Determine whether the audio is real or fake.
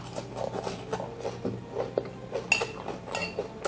real